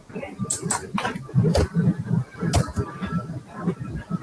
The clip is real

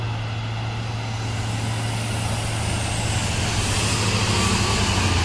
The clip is real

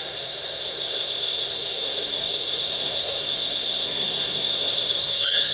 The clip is fake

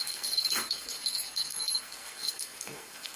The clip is fake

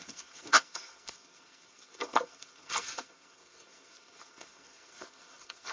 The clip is fake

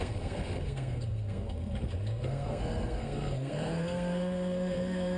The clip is fake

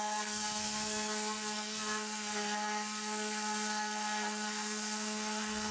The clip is fake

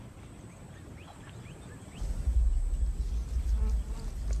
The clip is real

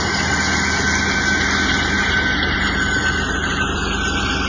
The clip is real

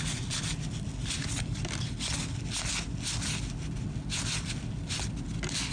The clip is real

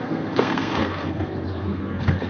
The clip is fake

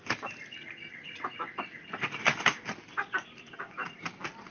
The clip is real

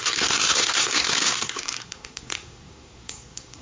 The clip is fake